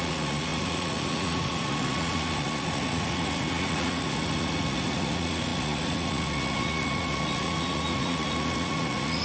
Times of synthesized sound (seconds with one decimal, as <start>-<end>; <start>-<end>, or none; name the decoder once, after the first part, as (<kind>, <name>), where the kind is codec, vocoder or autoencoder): 0.0-9.2 (vocoder, Vocos)

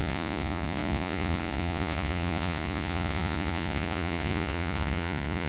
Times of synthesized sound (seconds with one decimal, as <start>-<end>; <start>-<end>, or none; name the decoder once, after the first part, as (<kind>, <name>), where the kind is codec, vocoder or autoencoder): 0.0-5.5 (vocoder, Vocos)

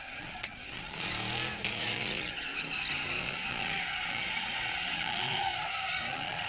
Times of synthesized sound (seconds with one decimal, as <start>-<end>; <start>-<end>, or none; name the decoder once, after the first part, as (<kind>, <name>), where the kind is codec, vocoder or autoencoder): 0.0-1.1 (vocoder, Vocos); 1.7-2.5; 3.2-5.5; 6.1-6.5

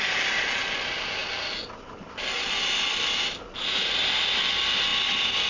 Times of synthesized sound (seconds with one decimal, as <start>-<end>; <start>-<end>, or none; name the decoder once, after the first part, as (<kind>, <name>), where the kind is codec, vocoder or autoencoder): none

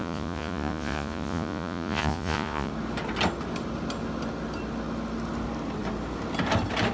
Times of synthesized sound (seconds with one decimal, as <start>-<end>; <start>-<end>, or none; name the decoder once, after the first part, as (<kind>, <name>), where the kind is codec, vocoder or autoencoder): 0.0-2.7 (vocoder, Vocos)

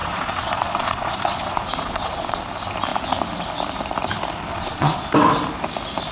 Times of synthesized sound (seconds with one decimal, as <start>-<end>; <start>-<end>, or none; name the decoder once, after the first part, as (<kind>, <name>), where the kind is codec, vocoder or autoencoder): 0.0-2.4 (vocoder, Vocos); 4.5-5.1

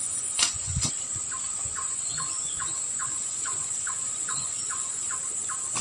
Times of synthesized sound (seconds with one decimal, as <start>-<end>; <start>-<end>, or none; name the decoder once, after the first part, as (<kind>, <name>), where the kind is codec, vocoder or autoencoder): 0.0-0.9 (vocoder, Vocos); 1.7-5.2

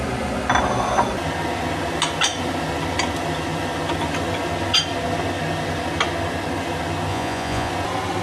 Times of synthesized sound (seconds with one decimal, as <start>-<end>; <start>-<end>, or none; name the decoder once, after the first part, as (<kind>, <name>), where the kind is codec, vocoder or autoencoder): 7.1-7.7 (vocoder, Vocos)